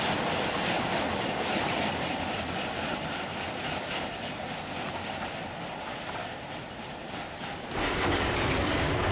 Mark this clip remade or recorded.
recorded